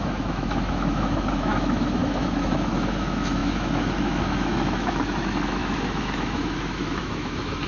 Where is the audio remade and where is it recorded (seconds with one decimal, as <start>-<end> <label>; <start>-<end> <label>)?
0.0-7.7 remade